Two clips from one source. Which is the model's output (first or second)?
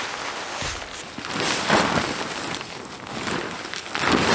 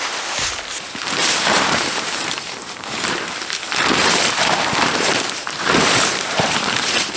second